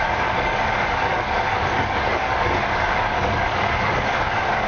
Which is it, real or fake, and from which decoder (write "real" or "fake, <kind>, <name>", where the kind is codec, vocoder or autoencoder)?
fake, codec, DAC